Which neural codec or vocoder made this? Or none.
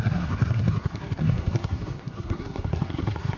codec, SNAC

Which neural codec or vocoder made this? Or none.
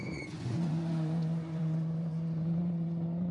vocoder, Vocos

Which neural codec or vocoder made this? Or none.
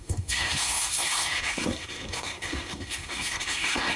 codec, SNAC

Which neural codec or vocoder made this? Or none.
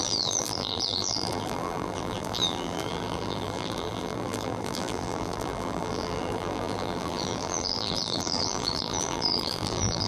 vocoder, BigVGAN v2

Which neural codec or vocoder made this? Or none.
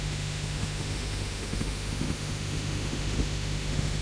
autoencoder, DAC-VAE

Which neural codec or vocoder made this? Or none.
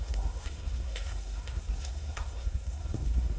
codec, SNAC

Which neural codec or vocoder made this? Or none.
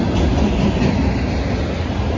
none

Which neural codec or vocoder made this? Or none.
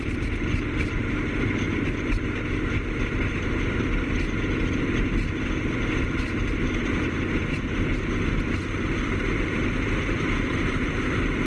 none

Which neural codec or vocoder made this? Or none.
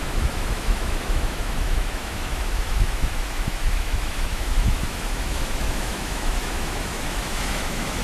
autoencoder, DAC-VAE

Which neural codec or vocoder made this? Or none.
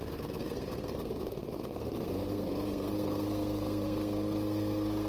codec, SNAC